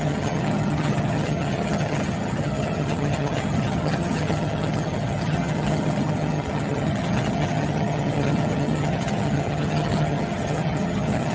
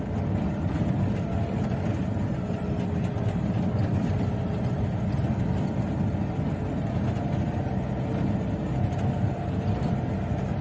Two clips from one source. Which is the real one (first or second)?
second